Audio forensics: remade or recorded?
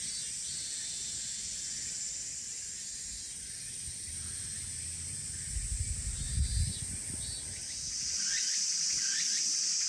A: recorded